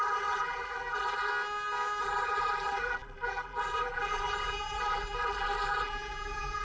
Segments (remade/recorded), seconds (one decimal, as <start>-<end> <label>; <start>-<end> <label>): 0.0-1.3 remade; 1.3-2.0 recorded; 2.0-6.6 remade